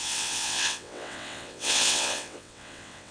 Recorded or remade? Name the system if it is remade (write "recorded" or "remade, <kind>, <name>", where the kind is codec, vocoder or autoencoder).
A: remade, vocoder, WaveNeXt